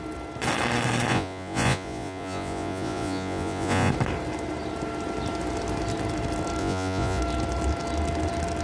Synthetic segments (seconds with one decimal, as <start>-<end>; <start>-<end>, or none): 1.1-3.9; 6.6-7.2